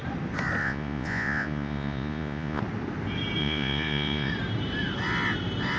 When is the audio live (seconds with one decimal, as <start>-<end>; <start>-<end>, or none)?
0.0-0.6; 2.6-3.4; 4.3-5.8